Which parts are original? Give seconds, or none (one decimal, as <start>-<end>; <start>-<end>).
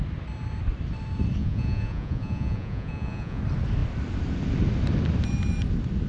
0.0-1.4; 3.4-6.1